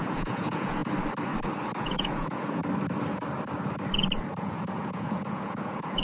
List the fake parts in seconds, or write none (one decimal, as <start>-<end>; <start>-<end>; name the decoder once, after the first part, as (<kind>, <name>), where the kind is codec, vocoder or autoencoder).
0.0-0.8 (vocoder, Vocos); 1.8-2.6; 4.4-6.0

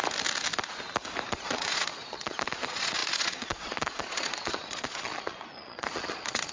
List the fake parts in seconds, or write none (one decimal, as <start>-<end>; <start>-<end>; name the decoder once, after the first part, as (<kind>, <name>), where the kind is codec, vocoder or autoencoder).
1.3-6.5 (vocoder, Vocos)

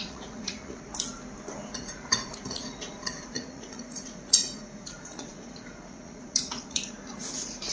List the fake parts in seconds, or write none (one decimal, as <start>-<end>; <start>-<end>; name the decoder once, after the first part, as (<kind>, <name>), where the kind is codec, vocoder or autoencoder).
0.0-1.1 (vocoder, Vocos); 1.8-7.7

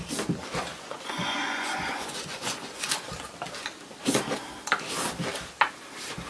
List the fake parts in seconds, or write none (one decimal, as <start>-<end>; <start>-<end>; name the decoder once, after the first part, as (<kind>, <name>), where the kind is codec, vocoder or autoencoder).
0.7-3.0 (vocoder, Vocos)

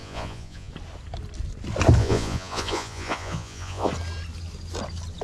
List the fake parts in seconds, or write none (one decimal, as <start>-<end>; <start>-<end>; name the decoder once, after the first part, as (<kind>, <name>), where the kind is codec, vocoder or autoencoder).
0.0-0.7 (vocoder, Vocos); 2.0-3.9